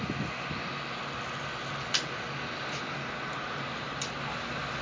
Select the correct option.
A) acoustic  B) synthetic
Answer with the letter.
A